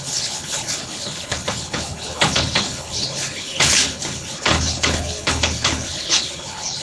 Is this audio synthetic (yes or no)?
yes